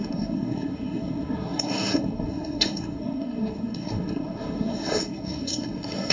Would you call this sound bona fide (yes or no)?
no